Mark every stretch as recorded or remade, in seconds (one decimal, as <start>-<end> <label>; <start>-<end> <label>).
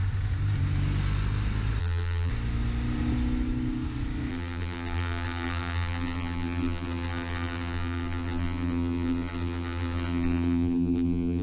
0.0-1.8 recorded; 1.8-2.3 remade; 2.3-4.3 recorded; 4.3-11.4 remade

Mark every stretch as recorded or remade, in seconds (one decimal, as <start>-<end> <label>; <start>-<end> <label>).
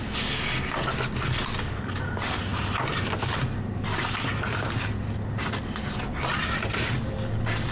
0.0-7.7 recorded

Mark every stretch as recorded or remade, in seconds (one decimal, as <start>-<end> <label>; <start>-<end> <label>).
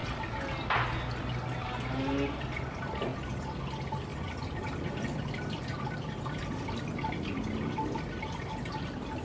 0.0-3.1 recorded; 3.1-3.6 remade; 3.6-4.1 recorded; 4.1-6.6 remade; 6.6-9.2 recorded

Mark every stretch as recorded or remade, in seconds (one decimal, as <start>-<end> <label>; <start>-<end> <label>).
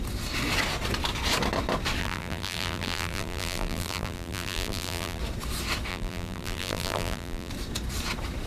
0.0-2.0 recorded; 2.0-5.2 remade; 5.2-5.9 recorded; 5.9-7.5 remade; 7.5-8.5 recorded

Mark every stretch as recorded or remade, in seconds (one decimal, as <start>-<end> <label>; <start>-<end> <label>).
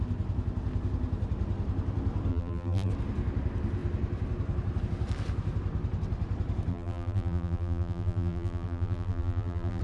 0.0-2.3 recorded; 2.3-2.9 remade; 2.9-6.7 recorded; 6.7-9.8 remade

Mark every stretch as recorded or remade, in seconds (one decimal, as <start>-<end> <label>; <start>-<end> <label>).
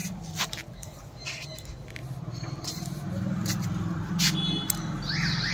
0.0-1.5 remade; 1.5-2.0 recorded; 2.0-4.1 remade; 4.1-5.5 recorded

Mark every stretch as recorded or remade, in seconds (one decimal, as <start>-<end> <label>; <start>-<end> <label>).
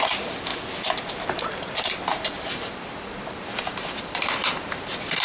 0.0-2.1 recorded; 2.1-4.2 remade; 4.2-5.2 recorded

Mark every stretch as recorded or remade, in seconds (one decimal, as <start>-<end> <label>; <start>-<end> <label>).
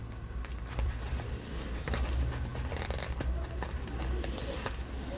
0.0-0.5 recorded; 0.5-1.9 remade; 1.9-2.5 recorded; 2.5-4.0 remade; 4.0-5.2 recorded